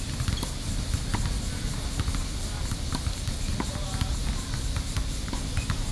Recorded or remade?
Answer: recorded